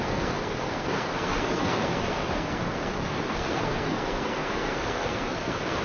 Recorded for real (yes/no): no